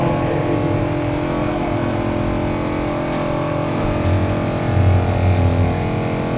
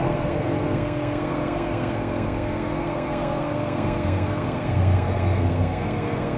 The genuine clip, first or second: first